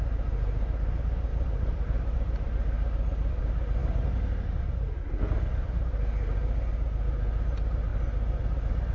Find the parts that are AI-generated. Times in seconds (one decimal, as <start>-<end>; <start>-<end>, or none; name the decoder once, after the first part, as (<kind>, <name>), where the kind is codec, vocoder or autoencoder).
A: 1.3-3.4 (vocoder, BigVGAN v2)